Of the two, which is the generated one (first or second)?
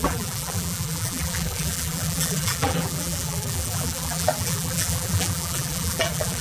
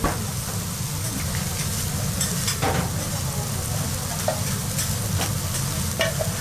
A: first